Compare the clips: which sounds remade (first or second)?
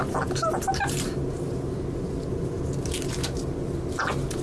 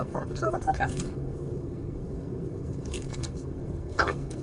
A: second